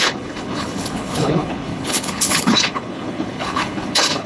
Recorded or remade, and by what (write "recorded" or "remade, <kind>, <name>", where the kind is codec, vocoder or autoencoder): remade, codec, HILCodec